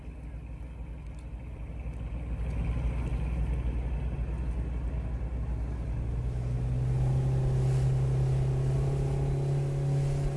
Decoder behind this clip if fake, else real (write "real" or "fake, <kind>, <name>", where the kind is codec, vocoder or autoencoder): real